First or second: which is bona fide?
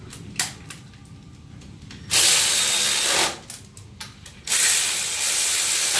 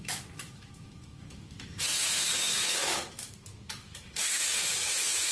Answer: first